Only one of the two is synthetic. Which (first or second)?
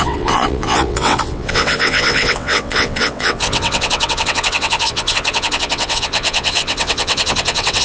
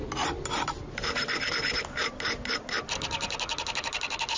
first